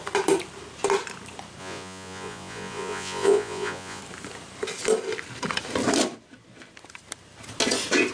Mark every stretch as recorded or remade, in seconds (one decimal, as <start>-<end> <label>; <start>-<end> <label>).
0.0-1.6 recorded; 1.6-4.0 remade; 4.0-8.1 recorded